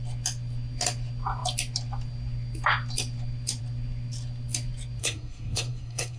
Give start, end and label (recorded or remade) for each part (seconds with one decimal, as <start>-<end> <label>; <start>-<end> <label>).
0.0-5.0 recorded; 5.0-6.2 remade